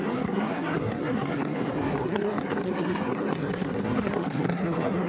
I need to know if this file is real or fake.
fake